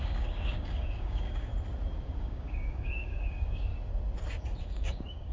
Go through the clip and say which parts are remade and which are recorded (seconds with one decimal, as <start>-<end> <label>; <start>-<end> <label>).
0.0-1.5 remade; 1.5-2.2 recorded; 2.2-3.7 remade; 3.7-4.6 recorded; 4.6-5.3 remade